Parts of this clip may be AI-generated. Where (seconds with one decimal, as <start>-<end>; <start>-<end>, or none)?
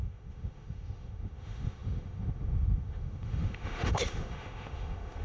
0.0-5.2